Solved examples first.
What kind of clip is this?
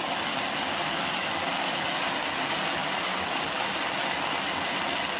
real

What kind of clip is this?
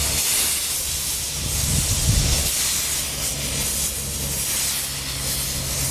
real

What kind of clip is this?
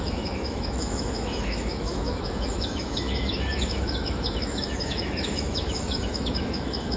fake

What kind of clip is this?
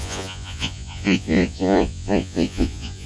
fake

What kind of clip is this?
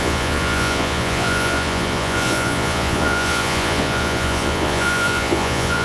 fake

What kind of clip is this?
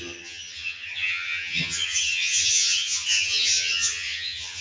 fake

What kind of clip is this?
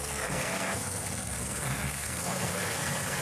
fake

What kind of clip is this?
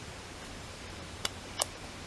fake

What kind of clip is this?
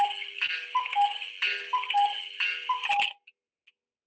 real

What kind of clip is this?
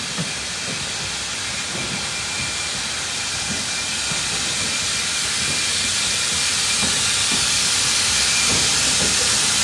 fake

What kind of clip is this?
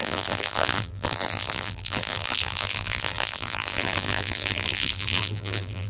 fake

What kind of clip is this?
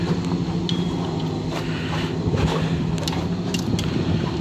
real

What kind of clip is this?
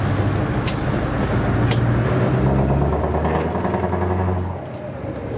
real